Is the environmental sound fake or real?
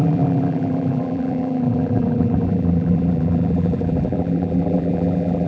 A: fake